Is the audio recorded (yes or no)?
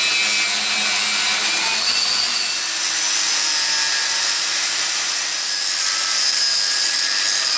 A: yes